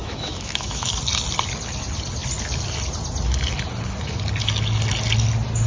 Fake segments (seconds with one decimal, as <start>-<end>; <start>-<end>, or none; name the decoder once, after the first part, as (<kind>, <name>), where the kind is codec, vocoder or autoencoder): 0.0-0.9 (autoencoder, DAC-VAE)